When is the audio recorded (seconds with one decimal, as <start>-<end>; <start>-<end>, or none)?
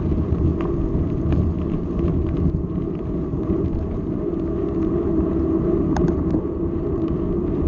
0.5-1.4